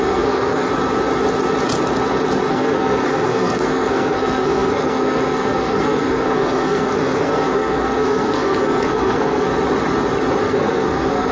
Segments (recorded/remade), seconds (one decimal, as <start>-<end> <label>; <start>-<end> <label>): 0.0-0.7 remade; 0.7-2.5 recorded; 2.5-9.5 remade; 9.5-10.4 recorded; 10.4-11.3 remade